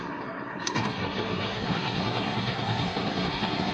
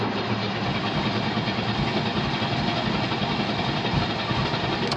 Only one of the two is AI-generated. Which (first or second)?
first